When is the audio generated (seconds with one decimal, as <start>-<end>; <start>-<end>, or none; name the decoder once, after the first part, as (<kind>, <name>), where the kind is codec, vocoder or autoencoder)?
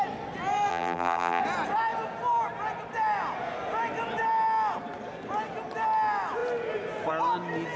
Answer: 0.7-1.4 (vocoder, BigVGAN v2)